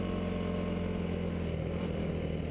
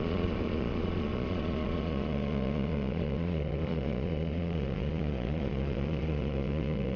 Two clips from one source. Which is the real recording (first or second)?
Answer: first